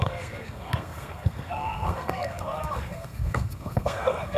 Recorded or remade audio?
remade